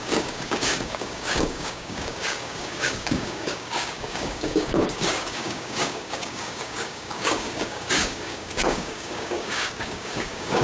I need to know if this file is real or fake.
fake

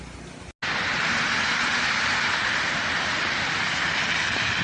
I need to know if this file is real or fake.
real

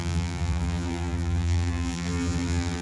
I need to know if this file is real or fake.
fake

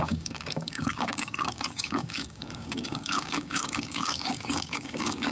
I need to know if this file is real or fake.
fake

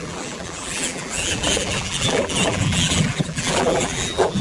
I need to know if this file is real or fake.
fake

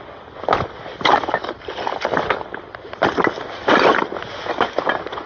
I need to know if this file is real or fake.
real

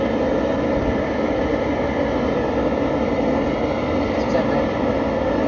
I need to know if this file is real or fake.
real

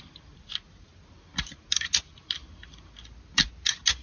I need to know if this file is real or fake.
real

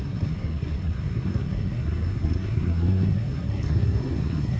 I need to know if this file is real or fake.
fake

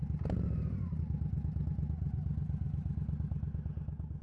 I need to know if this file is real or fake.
real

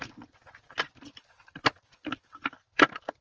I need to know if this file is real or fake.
real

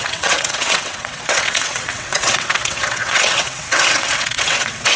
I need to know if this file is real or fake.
fake